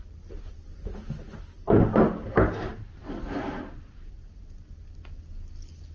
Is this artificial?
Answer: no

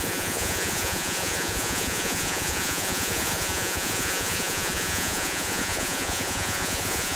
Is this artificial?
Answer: yes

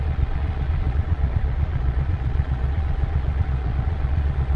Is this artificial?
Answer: yes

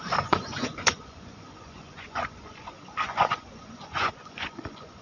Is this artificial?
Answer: yes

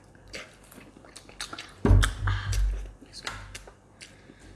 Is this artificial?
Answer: no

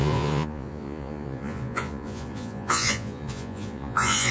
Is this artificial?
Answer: yes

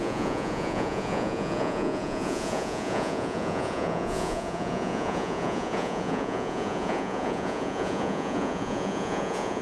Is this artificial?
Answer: yes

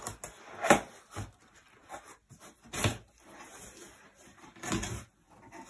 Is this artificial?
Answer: no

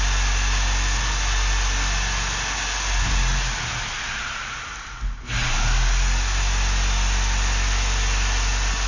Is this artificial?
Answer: no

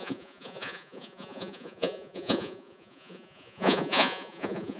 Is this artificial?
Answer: yes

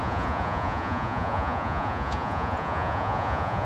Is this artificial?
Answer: yes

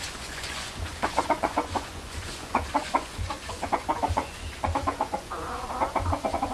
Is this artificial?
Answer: yes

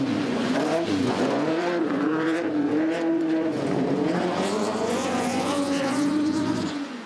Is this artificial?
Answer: yes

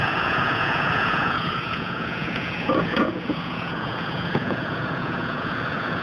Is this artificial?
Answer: yes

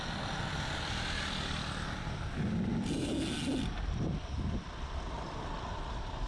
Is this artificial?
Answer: no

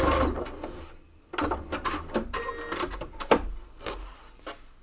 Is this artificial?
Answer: no